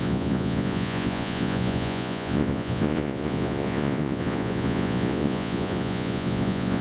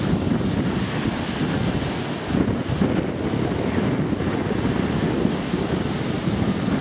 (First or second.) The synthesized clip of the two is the first